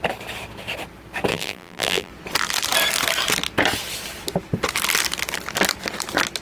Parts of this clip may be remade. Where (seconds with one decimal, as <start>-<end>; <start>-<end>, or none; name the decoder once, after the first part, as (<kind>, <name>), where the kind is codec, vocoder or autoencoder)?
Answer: 1.3-2.1 (vocoder, BigVGAN v2)